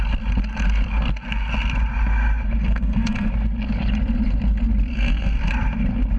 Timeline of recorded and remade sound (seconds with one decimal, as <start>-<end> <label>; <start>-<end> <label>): 0.0-2.6 recorded; 2.6-3.3 remade; 3.3-4.9 recorded; 4.9-5.5 remade; 5.5-6.2 recorded